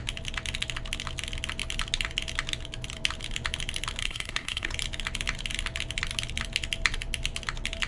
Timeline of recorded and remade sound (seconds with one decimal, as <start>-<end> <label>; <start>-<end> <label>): 0.0-4.0 recorded; 4.0-4.7 remade; 4.7-7.9 recorded